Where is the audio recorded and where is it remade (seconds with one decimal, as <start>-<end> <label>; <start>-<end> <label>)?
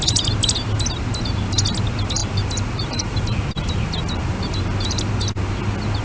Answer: 0.0-2.2 recorded; 2.2-5.1 remade; 5.1-6.0 recorded